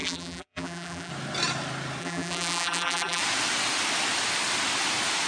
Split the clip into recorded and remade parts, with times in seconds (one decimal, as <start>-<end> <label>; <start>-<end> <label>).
0.0-1.1 remade; 1.1-2.0 recorded; 2.0-3.2 remade; 3.2-5.3 recorded